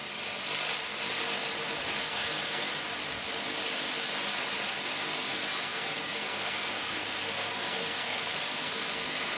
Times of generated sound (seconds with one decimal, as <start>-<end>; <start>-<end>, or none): 2.0-2.7; 4.7-9.4